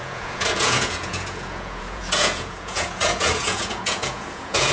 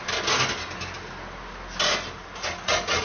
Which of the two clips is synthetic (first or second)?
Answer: first